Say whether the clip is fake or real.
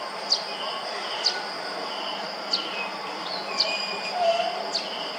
real